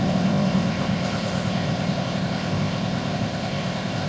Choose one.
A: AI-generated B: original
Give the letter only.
A